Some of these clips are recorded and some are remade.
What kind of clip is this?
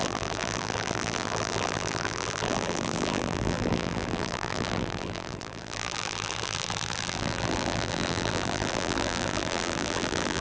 remade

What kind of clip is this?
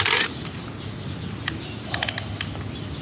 recorded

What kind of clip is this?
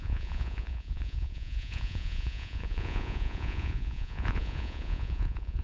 remade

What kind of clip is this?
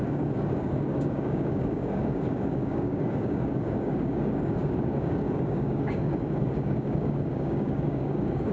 remade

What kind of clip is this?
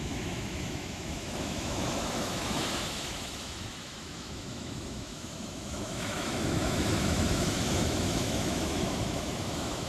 remade